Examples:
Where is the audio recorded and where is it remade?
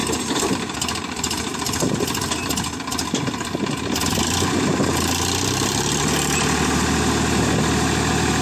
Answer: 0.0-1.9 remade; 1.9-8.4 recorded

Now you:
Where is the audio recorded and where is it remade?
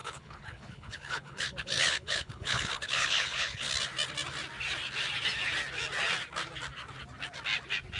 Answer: 0.0-3.7 remade; 3.7-8.0 recorded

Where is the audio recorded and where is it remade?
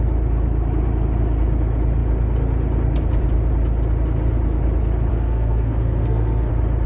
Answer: 0.0-5.1 recorded; 5.1-6.5 remade; 6.5-6.9 recorded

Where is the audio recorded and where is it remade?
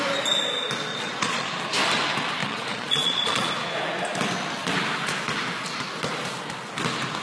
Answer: 0.0-0.9 recorded; 0.9-1.6 remade; 1.6-2.4 recorded; 2.4-3.5 remade; 3.5-7.2 recorded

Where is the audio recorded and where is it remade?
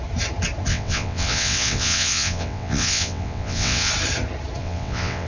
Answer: 0.0-0.7 recorded; 0.7-3.9 remade; 3.9-4.6 recorded; 4.6-5.3 remade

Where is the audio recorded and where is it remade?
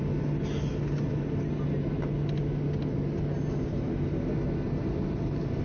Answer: 0.0-5.6 recorded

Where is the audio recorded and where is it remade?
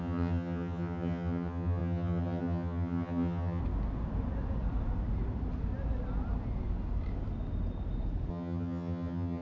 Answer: 0.0-3.6 remade; 3.6-8.3 recorded; 8.3-9.4 remade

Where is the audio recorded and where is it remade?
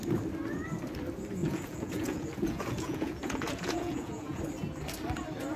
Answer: 0.0-1.4 recorded; 1.4-4.4 remade; 4.4-5.6 recorded